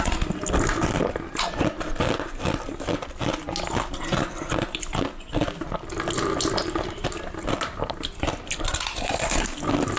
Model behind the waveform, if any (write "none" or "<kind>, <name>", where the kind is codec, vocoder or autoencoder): none